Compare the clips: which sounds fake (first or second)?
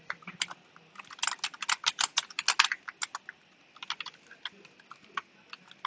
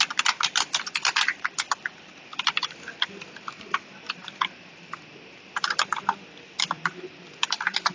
second